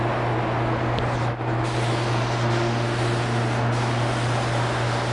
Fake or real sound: real